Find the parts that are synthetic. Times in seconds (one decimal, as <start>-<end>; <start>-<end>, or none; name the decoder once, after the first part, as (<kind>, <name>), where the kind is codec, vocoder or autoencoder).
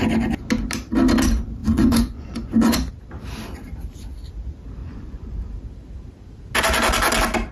1.6-2.9 (vocoder, Vocos); 4.8-5.5